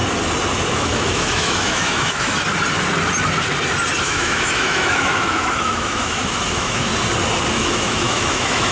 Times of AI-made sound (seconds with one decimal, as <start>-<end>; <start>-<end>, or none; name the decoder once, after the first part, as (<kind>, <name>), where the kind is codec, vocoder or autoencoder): 0.6-2.3 (autoencoder, DAC-VAE); 4.0-6.9; 7.5-8.7